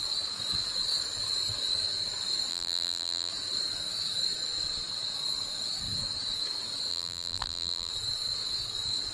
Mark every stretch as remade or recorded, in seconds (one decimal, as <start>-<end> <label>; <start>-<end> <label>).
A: 0.0-2.5 recorded; 2.5-3.3 remade; 3.3-6.9 recorded; 6.9-7.9 remade; 7.9-9.1 recorded